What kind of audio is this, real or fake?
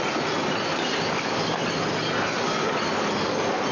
real